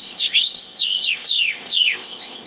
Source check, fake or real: fake